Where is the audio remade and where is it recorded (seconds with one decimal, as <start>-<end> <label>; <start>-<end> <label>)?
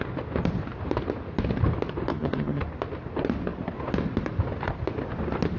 0.0-2.1 recorded; 2.1-2.6 remade; 2.6-5.6 recorded